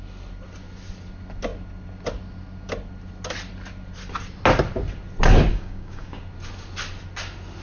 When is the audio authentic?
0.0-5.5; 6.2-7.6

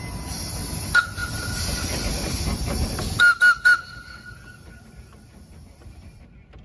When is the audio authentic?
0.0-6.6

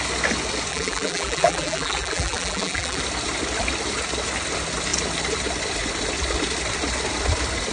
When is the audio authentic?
0.0-0.7; 3.0-7.7

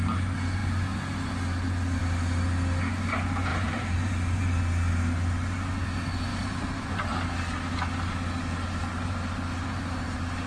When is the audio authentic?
0.0-3.5; 4.6-6.3; 6.9-8.9; 9.8-10.5

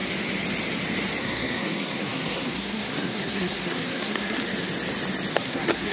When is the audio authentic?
0.0-1.2; 4.4-5.3